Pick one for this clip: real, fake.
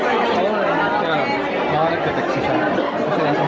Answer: real